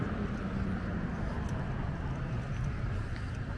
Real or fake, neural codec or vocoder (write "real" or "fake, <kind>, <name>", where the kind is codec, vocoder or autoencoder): real